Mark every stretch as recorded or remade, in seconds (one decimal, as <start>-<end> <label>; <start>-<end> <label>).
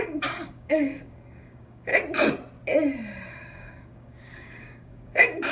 0.0-1.9 remade; 1.9-3.3 recorded; 3.3-5.5 remade